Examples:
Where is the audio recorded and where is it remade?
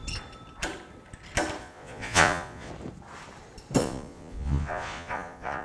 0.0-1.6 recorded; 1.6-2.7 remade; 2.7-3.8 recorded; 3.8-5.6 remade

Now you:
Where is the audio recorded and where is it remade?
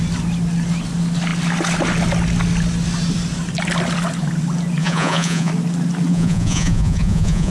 0.0-4.8 recorded; 4.8-5.5 remade; 5.5-6.1 recorded; 6.1-7.5 remade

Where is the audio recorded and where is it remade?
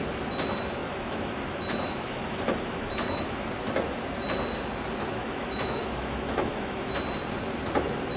0.0-0.8 recorded; 0.8-3.5 remade; 3.5-5.1 recorded; 5.1-6.9 remade; 6.9-8.2 recorded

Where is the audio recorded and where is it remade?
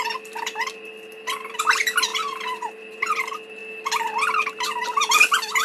0.0-2.1 remade; 2.1-2.8 recorded; 2.8-3.6 remade; 3.6-4.4 recorded; 4.4-5.6 remade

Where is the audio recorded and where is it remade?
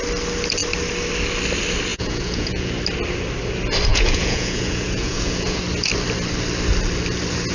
0.0-1.9 recorded; 1.9-2.7 remade; 2.7-3.9 recorded; 3.9-5.6 remade; 5.6-7.5 recorded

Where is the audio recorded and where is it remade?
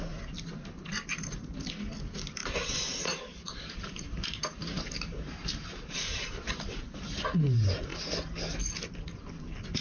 0.0-2.4 recorded; 2.4-6.8 remade; 6.8-9.8 recorded